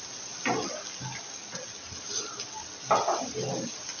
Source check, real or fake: real